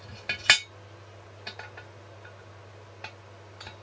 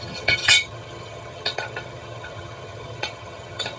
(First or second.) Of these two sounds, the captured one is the first